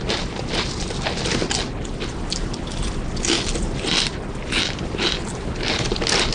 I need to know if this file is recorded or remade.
recorded